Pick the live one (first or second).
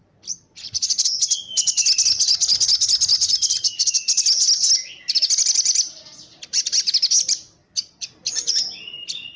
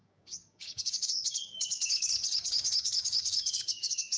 first